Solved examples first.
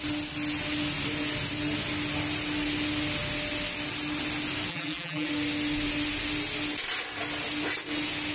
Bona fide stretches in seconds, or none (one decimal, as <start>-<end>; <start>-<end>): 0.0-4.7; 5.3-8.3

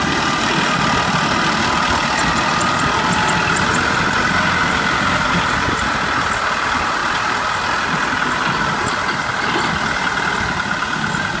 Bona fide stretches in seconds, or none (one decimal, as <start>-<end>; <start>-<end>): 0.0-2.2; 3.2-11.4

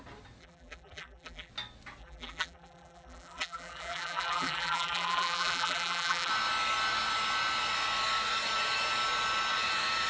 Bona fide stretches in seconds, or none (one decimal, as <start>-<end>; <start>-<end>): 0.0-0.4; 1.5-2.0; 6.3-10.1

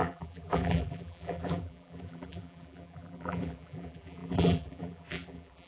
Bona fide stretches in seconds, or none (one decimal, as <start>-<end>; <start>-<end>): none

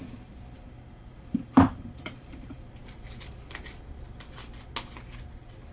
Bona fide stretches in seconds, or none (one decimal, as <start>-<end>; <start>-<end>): 2.8-5.7

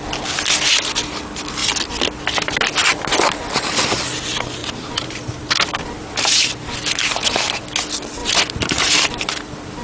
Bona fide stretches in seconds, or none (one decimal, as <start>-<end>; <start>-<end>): 0.0-4.6; 5.3-6.0; 7.6-8.2; 9.3-9.8